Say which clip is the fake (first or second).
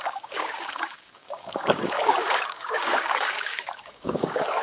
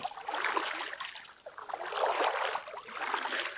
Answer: first